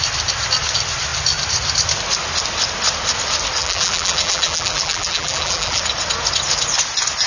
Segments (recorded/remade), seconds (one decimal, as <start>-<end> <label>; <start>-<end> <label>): 0.0-3.6 recorded; 3.6-5.8 remade; 5.8-7.3 recorded